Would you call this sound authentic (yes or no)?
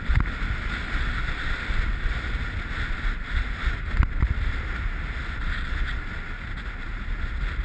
yes